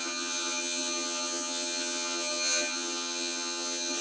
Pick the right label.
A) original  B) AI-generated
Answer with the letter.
B